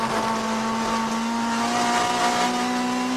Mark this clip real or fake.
real